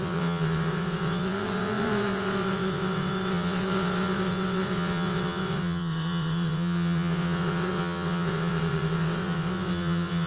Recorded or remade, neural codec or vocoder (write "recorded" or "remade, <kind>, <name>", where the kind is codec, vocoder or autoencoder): remade, vocoder, WaveNeXt